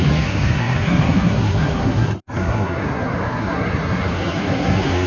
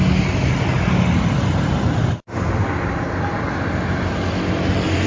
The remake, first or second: first